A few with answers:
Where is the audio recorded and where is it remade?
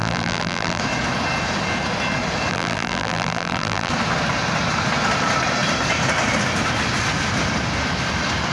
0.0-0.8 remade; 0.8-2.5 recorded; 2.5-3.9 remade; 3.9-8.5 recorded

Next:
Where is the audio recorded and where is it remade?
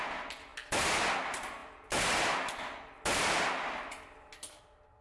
0.0-5.0 recorded